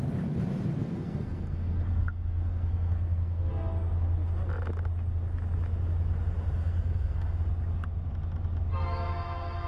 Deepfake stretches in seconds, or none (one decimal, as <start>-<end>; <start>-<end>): 0.8-3.5; 6.6-7.4